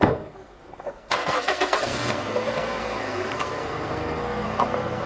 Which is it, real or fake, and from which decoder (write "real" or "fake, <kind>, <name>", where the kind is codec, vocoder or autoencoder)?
fake, codec, SNAC